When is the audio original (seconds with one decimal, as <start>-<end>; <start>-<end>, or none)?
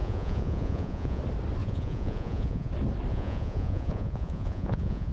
1.2-1.6; 2.7-3.1